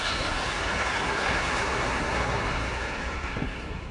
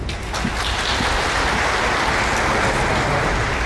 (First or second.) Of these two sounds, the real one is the second